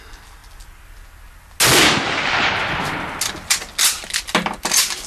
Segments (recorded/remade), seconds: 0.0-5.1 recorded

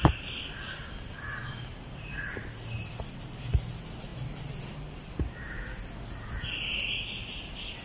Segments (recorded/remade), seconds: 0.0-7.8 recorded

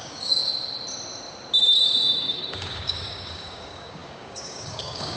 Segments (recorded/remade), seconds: 0.0-0.4 remade; 0.4-2.3 recorded; 2.3-5.2 remade

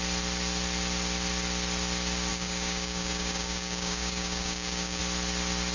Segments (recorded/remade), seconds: 0.0-2.3 recorded; 2.3-5.0 remade; 5.0-5.7 recorded

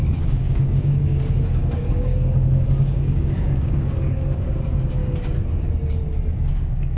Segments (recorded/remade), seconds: 0.0-5.0 remade; 5.0-6.5 recorded; 6.5-7.0 remade